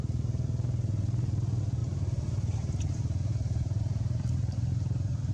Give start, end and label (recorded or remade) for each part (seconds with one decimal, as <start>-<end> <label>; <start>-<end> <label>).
0.0-1.8 recorded; 1.8-5.3 remade